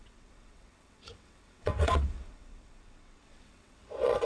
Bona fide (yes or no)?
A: no